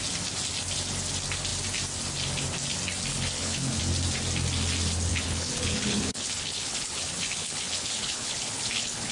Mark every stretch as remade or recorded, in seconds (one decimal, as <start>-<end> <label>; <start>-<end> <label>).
0.0-3.1 recorded; 3.1-3.8 remade; 3.8-5.1 recorded; 5.1-9.1 remade